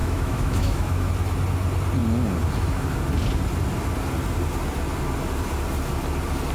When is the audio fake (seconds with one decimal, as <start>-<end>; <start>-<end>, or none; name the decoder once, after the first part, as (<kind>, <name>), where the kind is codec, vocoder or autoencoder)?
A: 0.0-1.1 (autoencoder, DAC-VAE)